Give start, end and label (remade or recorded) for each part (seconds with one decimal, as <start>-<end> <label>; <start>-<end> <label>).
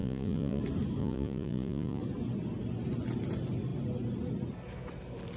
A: 0.0-0.6 remade; 0.6-1.0 recorded; 1.0-2.0 remade; 2.0-5.4 recorded